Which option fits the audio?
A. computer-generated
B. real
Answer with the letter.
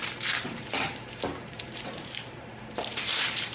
A